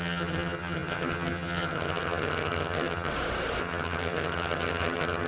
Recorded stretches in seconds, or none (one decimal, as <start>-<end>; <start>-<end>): 3.1-3.6